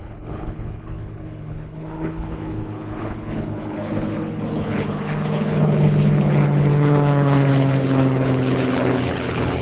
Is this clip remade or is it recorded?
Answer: remade